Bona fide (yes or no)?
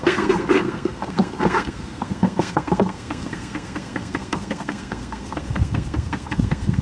no